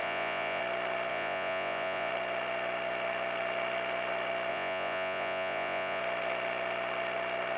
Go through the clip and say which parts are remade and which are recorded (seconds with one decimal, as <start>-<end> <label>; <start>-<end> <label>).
0.0-0.6 remade; 0.6-1.1 recorded; 1.1-2.1 remade; 2.1-4.5 recorded; 4.5-6.0 remade; 6.0-7.6 recorded